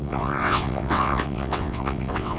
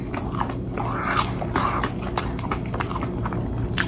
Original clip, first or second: second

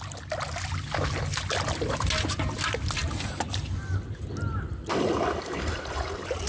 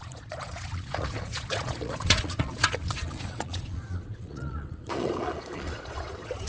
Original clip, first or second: first